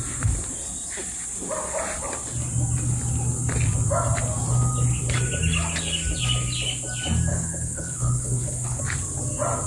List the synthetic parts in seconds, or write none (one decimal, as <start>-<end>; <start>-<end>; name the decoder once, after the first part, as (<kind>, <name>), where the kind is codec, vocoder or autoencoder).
7.3-8.8 (codec, HILCodec)